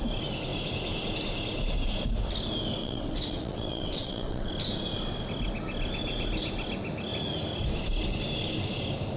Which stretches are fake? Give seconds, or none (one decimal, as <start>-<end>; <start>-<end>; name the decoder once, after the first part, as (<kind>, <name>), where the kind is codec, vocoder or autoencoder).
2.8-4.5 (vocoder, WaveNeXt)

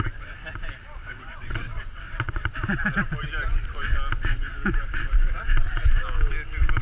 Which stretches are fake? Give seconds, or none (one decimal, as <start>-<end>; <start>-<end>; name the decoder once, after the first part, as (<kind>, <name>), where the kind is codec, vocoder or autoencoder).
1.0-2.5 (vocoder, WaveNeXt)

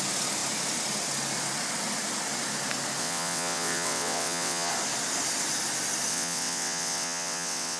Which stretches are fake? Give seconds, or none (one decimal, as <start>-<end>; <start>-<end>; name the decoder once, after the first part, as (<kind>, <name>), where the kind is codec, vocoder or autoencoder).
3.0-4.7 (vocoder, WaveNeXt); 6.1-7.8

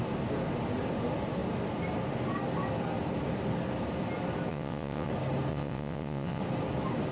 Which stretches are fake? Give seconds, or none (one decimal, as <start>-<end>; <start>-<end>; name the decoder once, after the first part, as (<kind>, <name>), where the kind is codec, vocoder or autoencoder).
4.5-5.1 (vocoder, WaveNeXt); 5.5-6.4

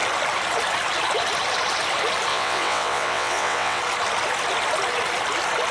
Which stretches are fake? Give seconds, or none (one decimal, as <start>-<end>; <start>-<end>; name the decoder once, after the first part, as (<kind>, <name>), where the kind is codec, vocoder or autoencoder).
2.3-3.8 (vocoder, WaveNeXt)

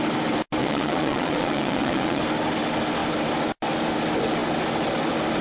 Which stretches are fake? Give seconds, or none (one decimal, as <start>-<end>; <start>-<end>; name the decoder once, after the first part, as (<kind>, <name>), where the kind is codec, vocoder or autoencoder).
0.6-2.2 (vocoder, WaveNeXt)

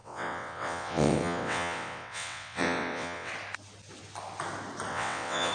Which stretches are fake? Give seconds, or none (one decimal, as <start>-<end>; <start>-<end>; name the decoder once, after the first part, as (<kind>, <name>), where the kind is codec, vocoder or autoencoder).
0.0-3.3 (vocoder, WaveNeXt); 4.9-5.5